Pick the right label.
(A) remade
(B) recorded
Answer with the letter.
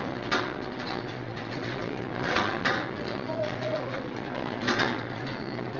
A